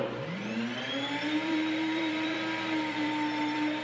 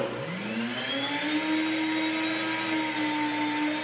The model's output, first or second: first